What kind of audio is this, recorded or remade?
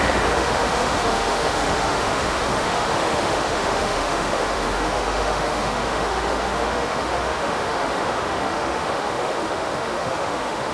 remade